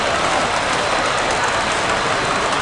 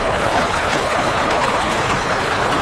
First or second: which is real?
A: first